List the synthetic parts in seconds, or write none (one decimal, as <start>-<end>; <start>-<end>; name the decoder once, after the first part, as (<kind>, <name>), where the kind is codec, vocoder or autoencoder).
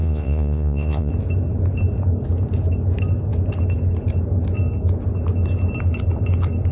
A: 0.0-1.1 (vocoder, Vocos)